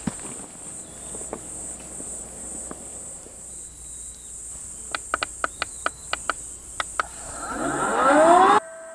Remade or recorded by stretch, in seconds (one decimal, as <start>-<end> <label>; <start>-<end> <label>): 0.0-2.9 recorded; 2.9-3.5 remade; 3.5-8.9 recorded